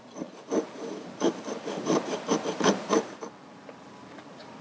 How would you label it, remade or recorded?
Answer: remade